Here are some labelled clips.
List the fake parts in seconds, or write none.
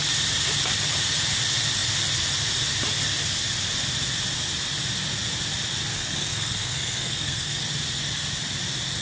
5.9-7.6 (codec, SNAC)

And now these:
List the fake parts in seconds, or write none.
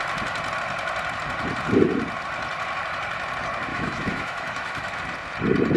3.7-5.0 (autoencoder, DAC-VAE)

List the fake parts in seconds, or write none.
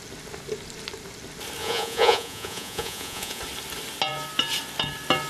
1.6-3.4 (vocoder, Vocos)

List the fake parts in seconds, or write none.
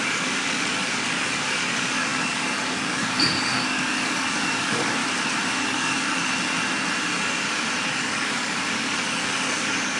0.0-5.0 (codec, DAC); 5.6-6.2; 7.9-10.0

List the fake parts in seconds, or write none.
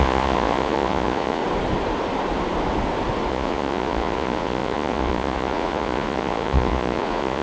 0.0-1.4 (vocoder, Vocos); 3.3-7.4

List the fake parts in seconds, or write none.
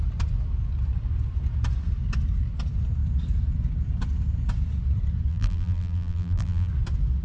5.3-6.7 (vocoder, BigVGAN v2)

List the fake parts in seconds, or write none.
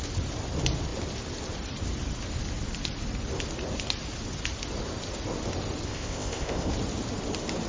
5.9-6.7 (codec, ZipCodec)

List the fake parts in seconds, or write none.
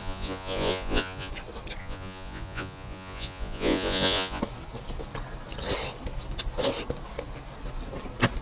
0.0-1.3 (vocoder, Vocos); 1.8-4.4